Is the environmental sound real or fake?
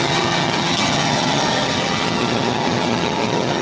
fake